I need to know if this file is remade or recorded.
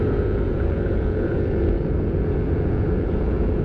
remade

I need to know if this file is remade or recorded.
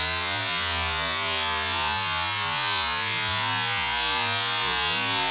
recorded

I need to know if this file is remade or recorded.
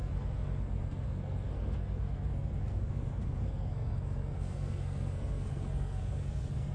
remade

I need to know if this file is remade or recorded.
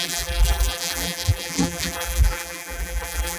remade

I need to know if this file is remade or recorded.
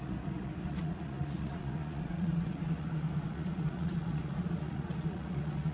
remade